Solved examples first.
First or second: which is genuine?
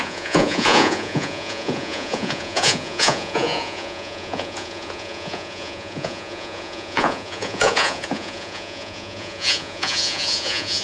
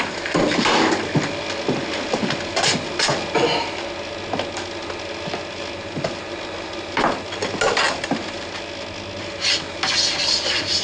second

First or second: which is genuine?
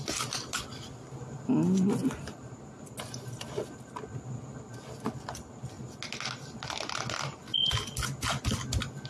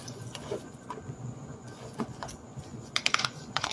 first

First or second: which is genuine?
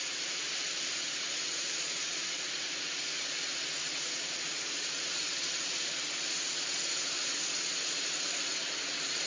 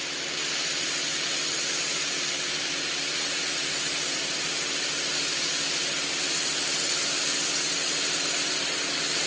second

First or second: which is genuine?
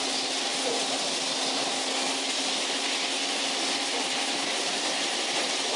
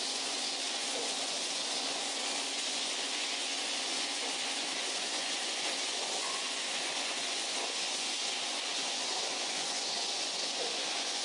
first